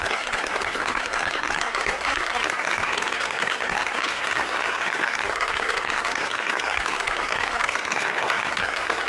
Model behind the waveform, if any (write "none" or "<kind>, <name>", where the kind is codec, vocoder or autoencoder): codec, SNAC